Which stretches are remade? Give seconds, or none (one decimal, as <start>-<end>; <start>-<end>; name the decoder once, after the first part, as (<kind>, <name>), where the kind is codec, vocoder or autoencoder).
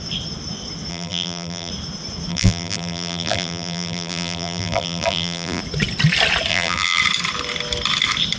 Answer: 0.9-1.7 (vocoder, BigVGAN v2); 2.3-5.6; 6.5-7.0